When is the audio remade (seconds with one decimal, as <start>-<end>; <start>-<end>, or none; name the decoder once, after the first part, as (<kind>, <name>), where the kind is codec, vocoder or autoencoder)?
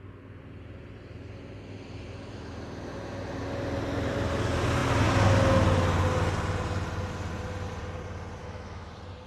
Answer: 8.4-8.9 (autoencoder, DAC-VAE)